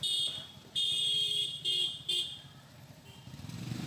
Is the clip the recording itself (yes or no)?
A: no